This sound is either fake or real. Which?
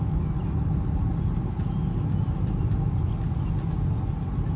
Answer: real